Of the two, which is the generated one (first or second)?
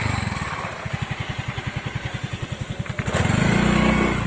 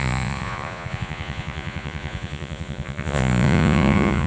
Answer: second